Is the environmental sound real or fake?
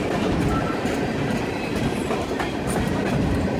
real